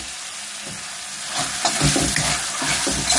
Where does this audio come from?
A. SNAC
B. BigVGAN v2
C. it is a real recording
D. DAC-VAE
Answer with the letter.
C